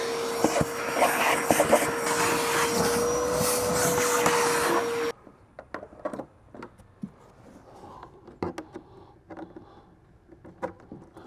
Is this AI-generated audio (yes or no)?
no